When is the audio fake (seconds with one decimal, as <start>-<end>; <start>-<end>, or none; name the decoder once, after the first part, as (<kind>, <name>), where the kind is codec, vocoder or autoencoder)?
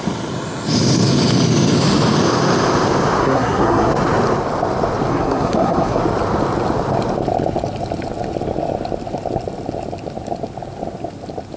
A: 3.2-3.9 (codec, SNAC); 5.1-6.0